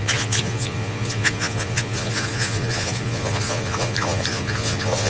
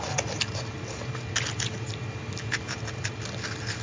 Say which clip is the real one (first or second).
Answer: second